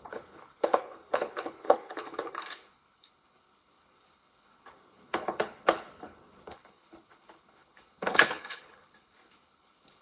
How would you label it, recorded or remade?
remade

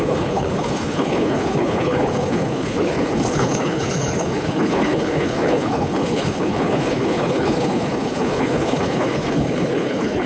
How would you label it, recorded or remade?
remade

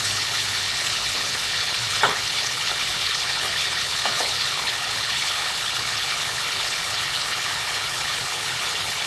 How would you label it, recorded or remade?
remade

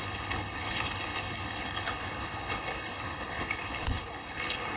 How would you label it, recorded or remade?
remade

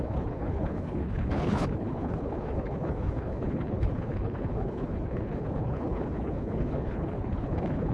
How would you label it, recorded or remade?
remade